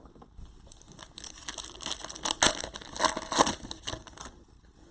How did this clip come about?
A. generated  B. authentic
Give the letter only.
B